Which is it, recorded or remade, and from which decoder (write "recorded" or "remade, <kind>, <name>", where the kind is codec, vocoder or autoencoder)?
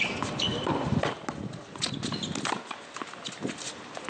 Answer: recorded